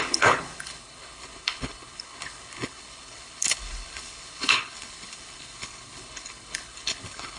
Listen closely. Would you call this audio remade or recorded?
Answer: remade